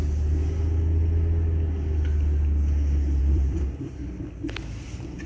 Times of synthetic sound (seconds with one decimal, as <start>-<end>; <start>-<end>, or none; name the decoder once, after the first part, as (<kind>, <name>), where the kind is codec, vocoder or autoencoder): 3.2-4.4 (vocoder, BigVGAN v2)

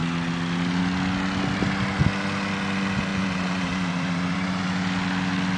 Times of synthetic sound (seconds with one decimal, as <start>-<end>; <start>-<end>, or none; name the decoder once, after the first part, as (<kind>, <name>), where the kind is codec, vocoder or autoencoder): 3.1-4.6 (vocoder, BigVGAN v2)

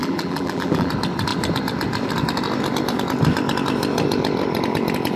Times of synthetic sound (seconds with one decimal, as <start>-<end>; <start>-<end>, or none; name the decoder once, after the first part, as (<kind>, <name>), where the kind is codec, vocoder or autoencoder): 0.0-0.9 (vocoder, BigVGAN v2)

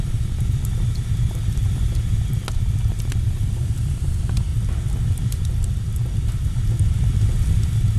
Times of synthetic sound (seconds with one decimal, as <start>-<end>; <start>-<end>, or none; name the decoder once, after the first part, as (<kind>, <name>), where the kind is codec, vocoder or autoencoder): 4.5-5.4 (vocoder, BigVGAN v2)

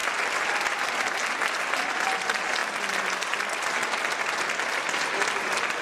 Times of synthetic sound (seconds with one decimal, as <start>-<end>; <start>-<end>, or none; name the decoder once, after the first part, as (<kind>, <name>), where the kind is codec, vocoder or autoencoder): none